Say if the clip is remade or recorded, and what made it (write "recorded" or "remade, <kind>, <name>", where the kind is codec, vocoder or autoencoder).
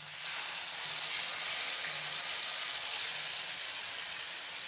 recorded